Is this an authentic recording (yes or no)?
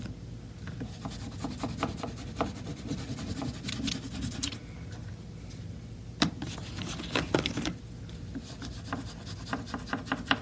yes